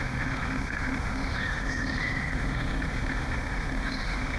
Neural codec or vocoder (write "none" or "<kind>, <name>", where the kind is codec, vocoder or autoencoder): autoencoder, DAC-VAE